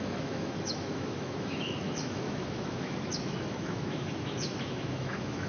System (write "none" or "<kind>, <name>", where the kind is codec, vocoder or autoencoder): autoencoder, DAC-VAE